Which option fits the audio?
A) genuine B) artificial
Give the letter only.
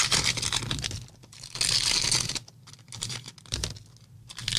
A